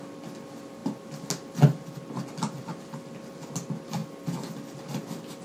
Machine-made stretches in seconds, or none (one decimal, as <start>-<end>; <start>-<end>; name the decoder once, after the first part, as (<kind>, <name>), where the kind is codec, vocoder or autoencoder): none